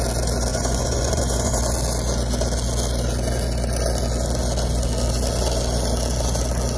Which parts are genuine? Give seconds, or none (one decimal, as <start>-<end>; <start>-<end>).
0.0-0.5; 1.6-6.8